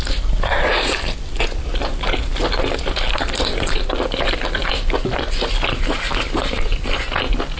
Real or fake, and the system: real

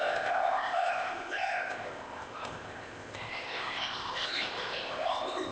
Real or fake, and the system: fake, codec, ZipCodec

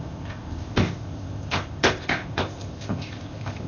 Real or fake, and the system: fake, codec, ZipCodec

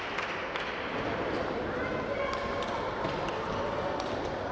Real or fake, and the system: real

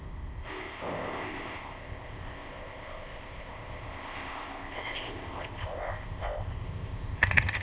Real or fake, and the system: fake, codec, ZipCodec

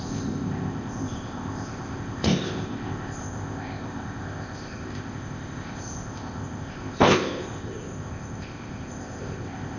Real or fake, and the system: fake, codec, ZipCodec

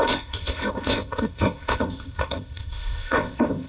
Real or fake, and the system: fake, codec, ZipCodec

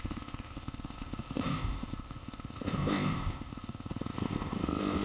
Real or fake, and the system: fake, codec, ZipCodec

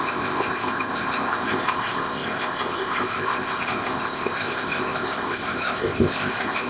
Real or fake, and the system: fake, codec, ZipCodec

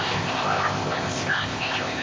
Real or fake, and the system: fake, codec, ZipCodec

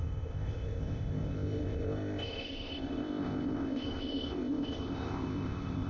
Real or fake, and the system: fake, codec, ZipCodec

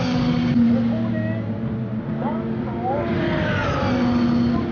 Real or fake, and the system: real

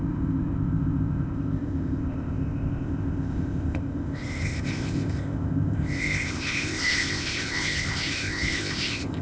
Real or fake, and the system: fake, codec, ZipCodec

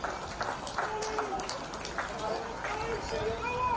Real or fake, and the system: real